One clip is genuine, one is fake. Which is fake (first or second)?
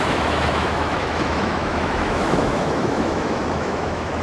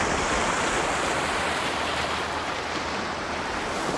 first